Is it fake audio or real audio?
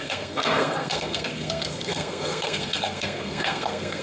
fake